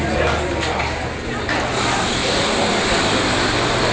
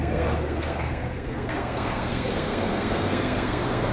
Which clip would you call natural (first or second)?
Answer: first